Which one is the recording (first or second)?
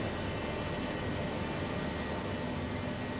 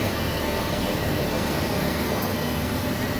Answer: first